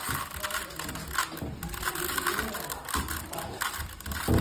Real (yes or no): yes